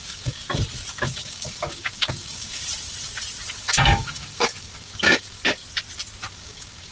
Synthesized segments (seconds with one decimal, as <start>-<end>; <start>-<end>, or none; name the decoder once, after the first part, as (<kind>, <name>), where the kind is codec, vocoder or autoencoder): 0.0-0.4 (codec, DAC); 0.9-2.6; 3.5-5.6; 6.3-6.9